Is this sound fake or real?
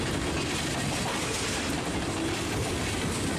real